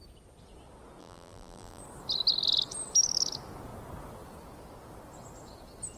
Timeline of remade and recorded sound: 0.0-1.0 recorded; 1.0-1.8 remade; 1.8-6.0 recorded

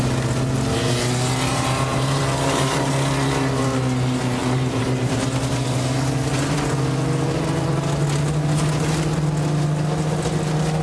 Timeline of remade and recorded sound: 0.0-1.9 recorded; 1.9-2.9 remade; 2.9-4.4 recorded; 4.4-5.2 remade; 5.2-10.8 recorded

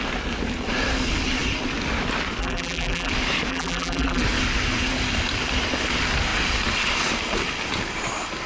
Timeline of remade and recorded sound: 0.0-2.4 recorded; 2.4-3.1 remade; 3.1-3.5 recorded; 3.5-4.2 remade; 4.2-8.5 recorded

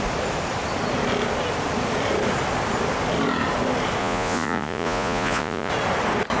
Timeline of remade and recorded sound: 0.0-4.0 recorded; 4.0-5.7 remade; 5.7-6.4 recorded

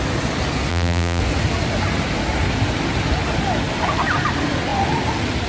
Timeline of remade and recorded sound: 0.0-0.7 recorded; 0.7-1.2 remade; 1.2-5.5 recorded